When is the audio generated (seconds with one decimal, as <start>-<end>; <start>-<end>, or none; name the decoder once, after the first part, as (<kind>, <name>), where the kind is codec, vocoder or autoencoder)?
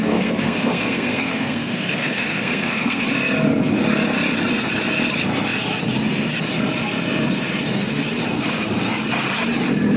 0.0-3.0 (codec, SNAC)